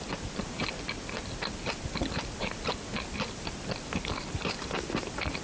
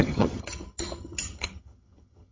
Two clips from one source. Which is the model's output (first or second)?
second